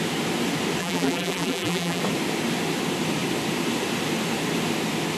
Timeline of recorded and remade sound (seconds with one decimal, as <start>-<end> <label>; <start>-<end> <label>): 0.0-0.8 recorded; 0.8-2.0 remade; 2.0-5.2 recorded